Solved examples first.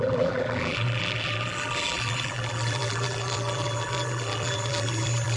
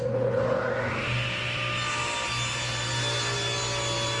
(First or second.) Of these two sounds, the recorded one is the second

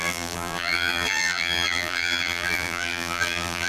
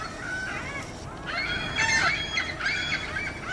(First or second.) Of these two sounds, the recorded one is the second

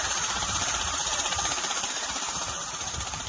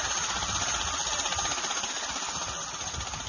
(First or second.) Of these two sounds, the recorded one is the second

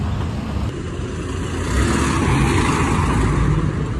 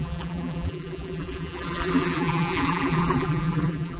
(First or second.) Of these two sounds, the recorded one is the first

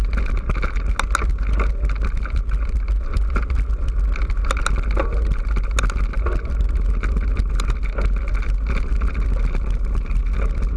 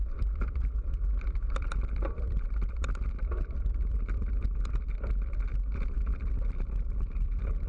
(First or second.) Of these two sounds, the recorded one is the first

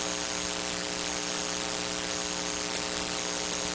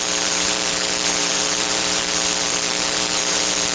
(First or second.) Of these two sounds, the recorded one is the first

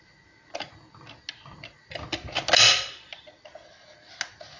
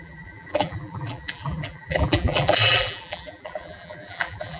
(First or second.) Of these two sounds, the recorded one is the first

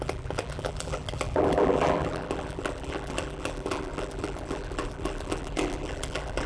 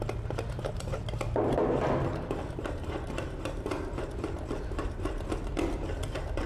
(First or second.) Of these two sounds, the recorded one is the second